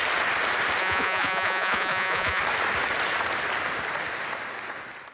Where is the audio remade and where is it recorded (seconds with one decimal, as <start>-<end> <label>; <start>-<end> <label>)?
0.0-0.8 recorded; 0.8-2.4 remade; 2.4-5.1 recorded

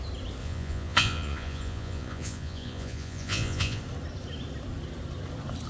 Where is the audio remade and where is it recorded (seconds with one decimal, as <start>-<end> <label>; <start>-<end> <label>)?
0.0-0.4 recorded; 0.4-3.8 remade; 3.8-5.7 recorded

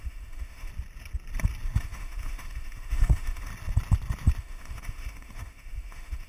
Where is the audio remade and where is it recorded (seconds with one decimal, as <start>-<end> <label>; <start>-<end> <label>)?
0.0-0.7 remade; 0.7-1.8 recorded; 1.8-3.5 remade; 3.5-4.4 recorded; 4.4-6.3 remade

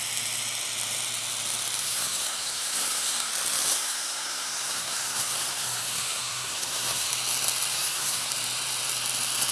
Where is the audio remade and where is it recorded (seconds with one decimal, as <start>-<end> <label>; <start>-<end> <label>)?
0.0-1.8 recorded; 1.8-3.3 remade; 3.3-3.7 recorded; 3.7-7.1 remade; 7.1-7.7 recorded; 7.7-8.3 remade; 8.3-9.5 recorded

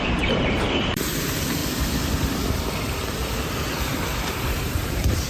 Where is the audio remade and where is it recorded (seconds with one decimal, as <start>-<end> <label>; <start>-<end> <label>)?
0.0-1.6 remade; 1.6-3.9 recorded; 3.9-5.3 remade

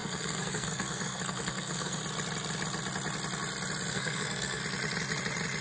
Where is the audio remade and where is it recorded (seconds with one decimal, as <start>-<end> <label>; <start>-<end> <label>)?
0.0-2.0 remade; 2.0-3.9 recorded; 3.9-4.6 remade; 4.6-5.6 recorded

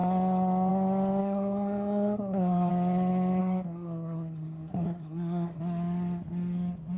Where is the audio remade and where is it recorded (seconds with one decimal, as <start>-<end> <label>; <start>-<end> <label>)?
0.0-1.2 recorded; 1.2-2.7 remade; 2.7-3.4 recorded; 3.4-5.6 remade; 5.6-7.0 recorded

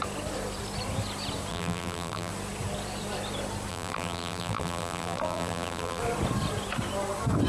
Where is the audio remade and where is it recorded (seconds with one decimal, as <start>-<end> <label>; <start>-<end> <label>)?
0.0-1.5 recorded; 1.5-2.3 remade; 2.3-3.7 recorded; 3.7-6.0 remade; 6.0-7.5 recorded